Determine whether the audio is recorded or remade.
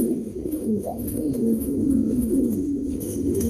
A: remade